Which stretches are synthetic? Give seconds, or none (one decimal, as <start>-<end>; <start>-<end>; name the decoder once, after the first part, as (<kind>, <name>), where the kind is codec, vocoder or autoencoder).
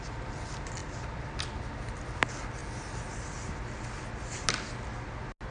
0.8-1.5 (vocoder, BigVGAN v2)